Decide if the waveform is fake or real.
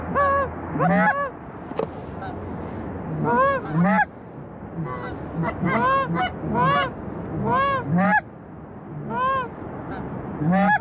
real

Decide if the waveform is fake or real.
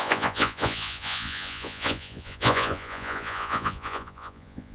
fake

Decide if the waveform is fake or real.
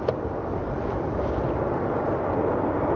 real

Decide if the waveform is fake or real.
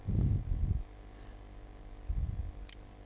real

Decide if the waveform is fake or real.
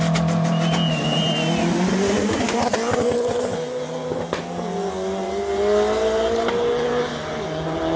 real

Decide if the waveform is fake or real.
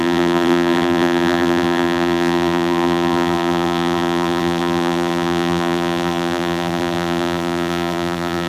fake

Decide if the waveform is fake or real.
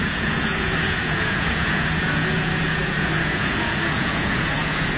fake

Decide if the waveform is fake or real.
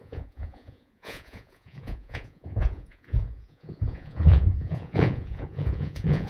fake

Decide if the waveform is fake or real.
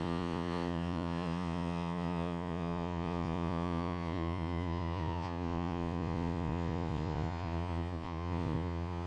fake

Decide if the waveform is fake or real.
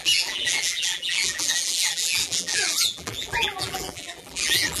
fake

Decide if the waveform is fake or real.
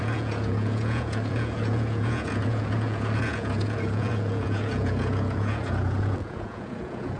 fake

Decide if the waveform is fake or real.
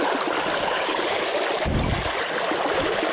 real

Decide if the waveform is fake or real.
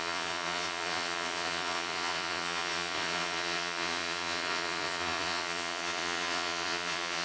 fake